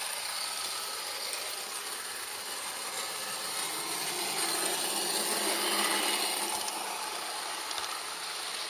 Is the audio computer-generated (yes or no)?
no